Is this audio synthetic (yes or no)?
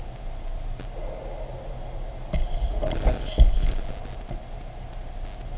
no